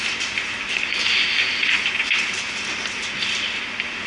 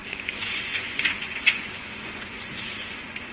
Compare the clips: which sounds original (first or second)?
first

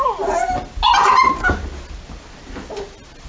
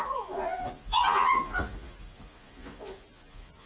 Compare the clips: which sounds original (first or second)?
first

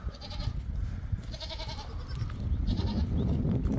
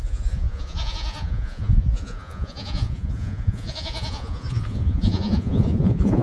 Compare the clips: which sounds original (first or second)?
first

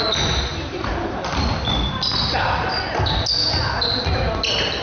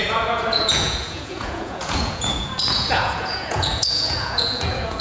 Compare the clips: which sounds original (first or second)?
first